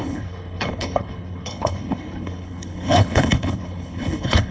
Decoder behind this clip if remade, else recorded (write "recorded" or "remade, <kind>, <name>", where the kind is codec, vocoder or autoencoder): remade, codec, HILCodec